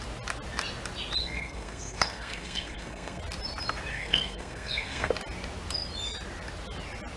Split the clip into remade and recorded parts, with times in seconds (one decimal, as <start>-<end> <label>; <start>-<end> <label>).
0.0-1.2 recorded; 1.2-3.2 remade; 3.2-3.9 recorded; 3.9-5.1 remade; 5.1-7.2 recorded